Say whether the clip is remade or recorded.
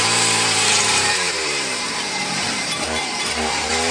remade